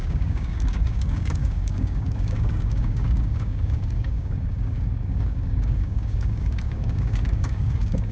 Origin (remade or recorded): remade